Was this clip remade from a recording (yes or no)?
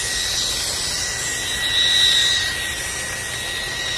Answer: no